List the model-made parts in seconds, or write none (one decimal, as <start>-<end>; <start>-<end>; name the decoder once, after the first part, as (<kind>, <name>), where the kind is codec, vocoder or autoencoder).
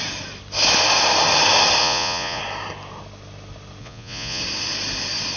1.8-2.4 (vocoder, Vocos); 3.8-4.4